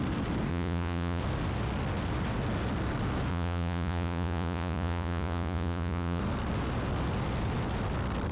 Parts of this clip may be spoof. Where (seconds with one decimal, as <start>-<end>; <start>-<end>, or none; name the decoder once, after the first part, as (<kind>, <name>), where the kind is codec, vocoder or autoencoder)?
0.5-1.2 (vocoder, Vocos); 3.3-6.2